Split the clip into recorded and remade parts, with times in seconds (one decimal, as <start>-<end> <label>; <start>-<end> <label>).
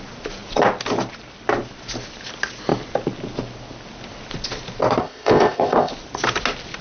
0.0-5.0 recorded; 5.0-5.9 remade; 5.9-6.8 recorded